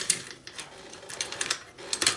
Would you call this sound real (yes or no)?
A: no